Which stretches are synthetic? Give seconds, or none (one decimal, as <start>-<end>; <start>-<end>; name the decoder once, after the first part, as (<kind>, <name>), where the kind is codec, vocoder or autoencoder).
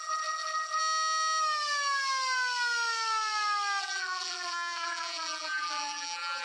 0.0-0.8 (vocoder, BigVGAN v2); 3.8-6.4